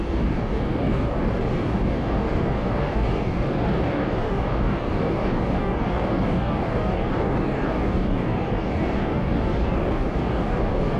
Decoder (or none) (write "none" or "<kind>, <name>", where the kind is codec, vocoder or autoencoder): codec, DAC